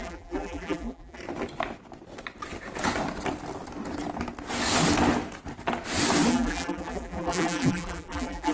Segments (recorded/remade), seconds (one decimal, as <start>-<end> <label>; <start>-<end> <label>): 0.0-1.2 remade; 1.2-6.3 recorded; 6.3-8.5 remade